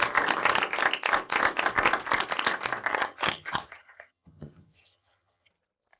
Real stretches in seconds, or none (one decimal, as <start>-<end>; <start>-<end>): 0.0-2.9; 5.5-6.0